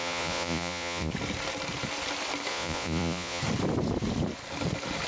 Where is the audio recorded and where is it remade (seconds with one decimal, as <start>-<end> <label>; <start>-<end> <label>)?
0.0-1.1 remade; 1.1-2.5 recorded; 2.5-3.4 remade; 3.4-5.1 recorded